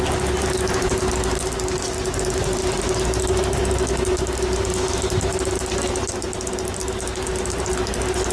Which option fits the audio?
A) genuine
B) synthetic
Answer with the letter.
A